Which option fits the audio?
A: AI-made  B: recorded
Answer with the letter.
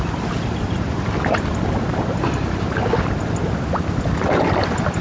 B